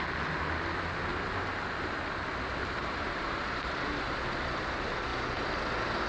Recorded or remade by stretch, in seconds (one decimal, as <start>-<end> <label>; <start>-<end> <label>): 0.0-1.1 recorded; 1.1-2.0 remade; 2.0-2.6 recorded; 2.6-3.7 remade; 3.7-6.1 recorded